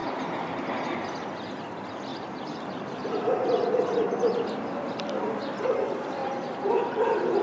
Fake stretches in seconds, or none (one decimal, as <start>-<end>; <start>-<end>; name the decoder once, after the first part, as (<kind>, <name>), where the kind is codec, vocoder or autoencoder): 2.1-3.3 (vocoder, BigVGAN v2)